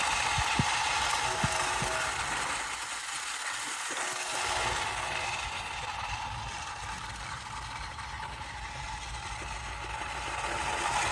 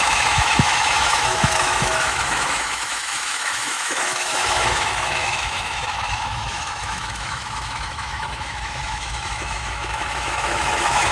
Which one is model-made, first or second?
second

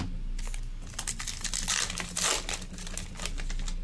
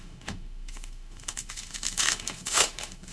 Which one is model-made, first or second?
second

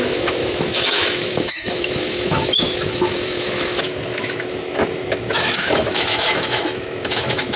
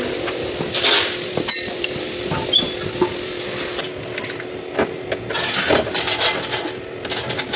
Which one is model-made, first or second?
first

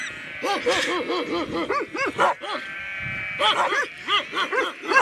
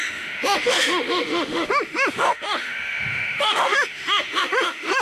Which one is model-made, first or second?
second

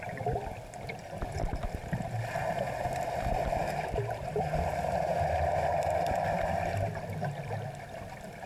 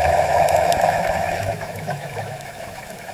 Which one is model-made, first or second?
second